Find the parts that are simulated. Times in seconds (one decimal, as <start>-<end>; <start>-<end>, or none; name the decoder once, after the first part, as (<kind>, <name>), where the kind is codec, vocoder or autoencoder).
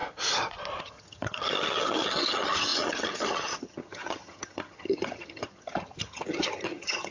0.8-7.1 (vocoder, HiFi-GAN)